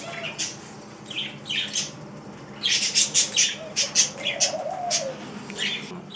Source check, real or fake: real